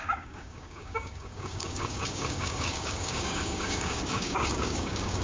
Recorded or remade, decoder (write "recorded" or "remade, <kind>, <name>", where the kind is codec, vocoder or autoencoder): remade, codec, DAC